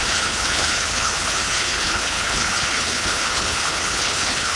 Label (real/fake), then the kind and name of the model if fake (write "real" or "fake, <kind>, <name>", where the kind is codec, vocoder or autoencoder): fake, codec, HILCodec